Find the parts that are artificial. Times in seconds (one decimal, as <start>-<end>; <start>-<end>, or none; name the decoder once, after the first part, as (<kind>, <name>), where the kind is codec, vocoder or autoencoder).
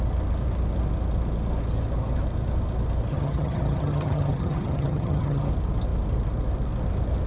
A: 3.1-5.5 (vocoder, HiFi-GAN)